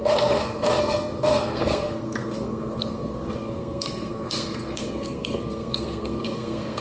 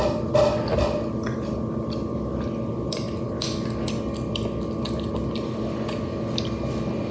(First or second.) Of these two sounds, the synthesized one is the first